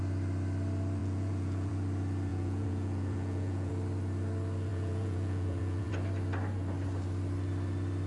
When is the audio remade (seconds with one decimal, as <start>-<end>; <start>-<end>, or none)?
1.0-1.7; 2.3-3.7; 4.7-5.9